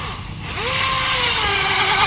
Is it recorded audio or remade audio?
remade